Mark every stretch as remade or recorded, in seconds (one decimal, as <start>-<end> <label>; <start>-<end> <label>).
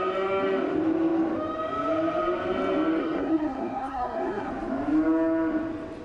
0.0-3.0 recorded; 3.0-4.5 remade; 4.5-6.0 recorded